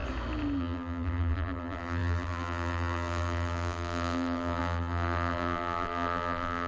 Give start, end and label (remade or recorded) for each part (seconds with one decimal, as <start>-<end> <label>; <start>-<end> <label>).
0.0-0.6 recorded; 0.6-6.7 remade

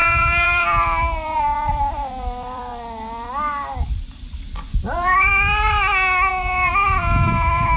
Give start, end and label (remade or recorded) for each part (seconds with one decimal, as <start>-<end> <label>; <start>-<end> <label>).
0.0-2.7 remade; 2.7-4.7 recorded; 4.7-5.3 remade; 5.3-6.3 recorded; 6.3-7.8 remade

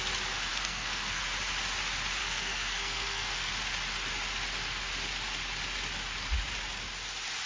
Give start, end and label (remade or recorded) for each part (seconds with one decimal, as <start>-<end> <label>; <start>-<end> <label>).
0.0-0.5 recorded; 0.5-1.2 remade; 1.2-2.2 recorded; 2.2-3.5 remade; 3.5-7.5 recorded

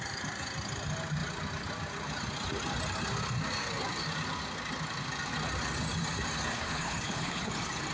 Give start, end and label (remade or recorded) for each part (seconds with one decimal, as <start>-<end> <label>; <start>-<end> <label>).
0.0-6.5 recorded; 6.5-7.5 remade; 7.5-7.9 recorded

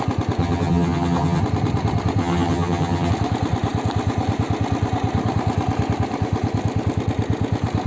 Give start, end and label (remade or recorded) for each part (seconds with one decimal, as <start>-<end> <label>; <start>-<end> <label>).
0.0-0.4 recorded; 0.4-1.4 remade; 1.4-2.2 recorded; 2.2-3.1 remade; 3.1-7.9 recorded